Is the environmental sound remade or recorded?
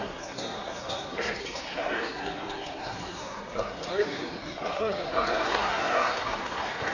remade